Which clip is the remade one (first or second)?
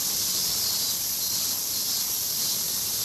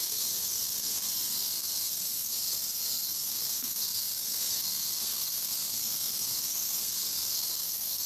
second